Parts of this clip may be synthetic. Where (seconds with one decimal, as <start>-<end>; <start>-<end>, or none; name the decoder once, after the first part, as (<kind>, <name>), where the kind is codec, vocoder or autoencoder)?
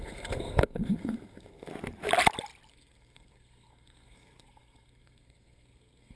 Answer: 0.0-1.7 (codec, SNAC); 2.7-6.2